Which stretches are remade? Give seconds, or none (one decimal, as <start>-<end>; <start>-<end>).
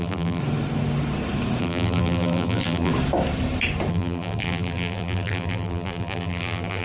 0.0-0.4; 1.6-2.9; 3.9-6.8